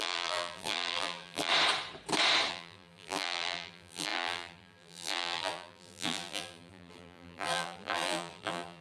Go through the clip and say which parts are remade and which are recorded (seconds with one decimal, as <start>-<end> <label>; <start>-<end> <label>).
0.0-1.5 remade; 1.5-2.5 recorded; 2.5-8.8 remade